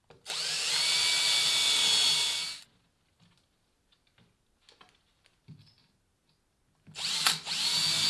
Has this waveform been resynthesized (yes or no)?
no